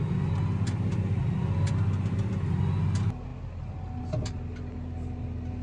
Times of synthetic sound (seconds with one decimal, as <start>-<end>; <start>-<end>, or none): 1.2-1.7; 3.3-4.0